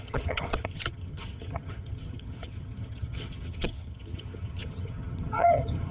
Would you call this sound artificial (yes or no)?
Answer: yes